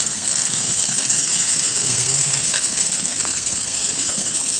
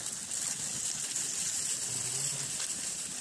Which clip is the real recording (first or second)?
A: second